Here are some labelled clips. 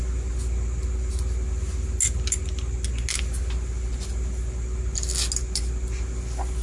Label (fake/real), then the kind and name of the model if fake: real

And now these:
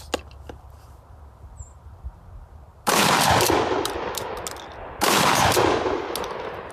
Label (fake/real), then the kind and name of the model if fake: real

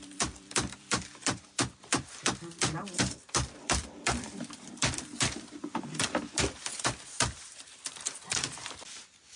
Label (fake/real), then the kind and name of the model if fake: fake, vocoder, BigVGAN v2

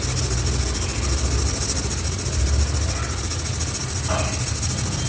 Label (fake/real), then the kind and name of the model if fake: real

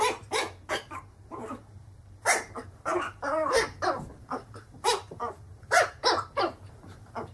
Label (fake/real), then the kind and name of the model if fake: fake, vocoder, BigVGAN v2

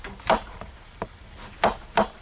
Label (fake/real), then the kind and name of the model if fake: fake, vocoder, BigVGAN v2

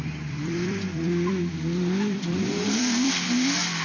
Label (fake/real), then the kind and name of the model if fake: fake, vocoder, BigVGAN v2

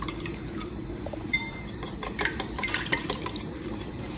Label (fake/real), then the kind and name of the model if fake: fake, vocoder, BigVGAN v2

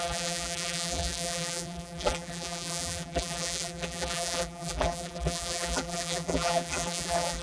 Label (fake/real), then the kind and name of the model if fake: fake, vocoder, BigVGAN v2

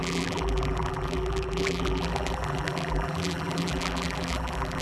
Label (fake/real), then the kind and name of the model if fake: fake, vocoder, BigVGAN v2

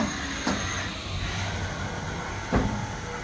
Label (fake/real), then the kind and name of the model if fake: real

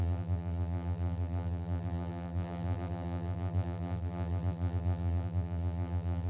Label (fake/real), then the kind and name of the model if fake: fake, vocoder, BigVGAN v2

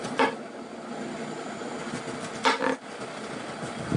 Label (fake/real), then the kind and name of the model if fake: real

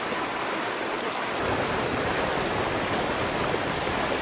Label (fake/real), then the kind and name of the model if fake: real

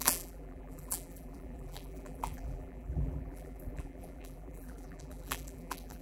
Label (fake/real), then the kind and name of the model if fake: fake, vocoder, BigVGAN v2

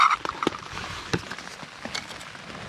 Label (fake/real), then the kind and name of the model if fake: real